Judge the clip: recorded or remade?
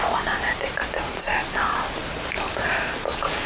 recorded